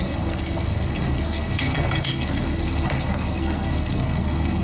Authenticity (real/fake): fake